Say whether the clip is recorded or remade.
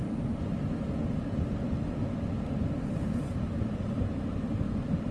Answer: recorded